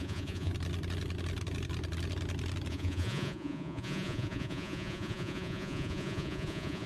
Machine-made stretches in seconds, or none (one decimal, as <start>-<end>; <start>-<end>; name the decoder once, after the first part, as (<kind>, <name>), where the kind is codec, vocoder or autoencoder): 0.0-0.5 (vocoder, Vocos); 2.7-6.9